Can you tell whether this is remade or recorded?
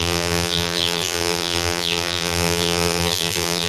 remade